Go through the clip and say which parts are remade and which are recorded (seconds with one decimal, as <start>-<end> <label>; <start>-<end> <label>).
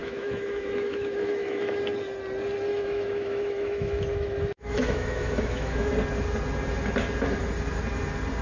0.0-1.8 remade; 1.8-2.7 recorded; 2.7-5.9 remade; 5.9-8.4 recorded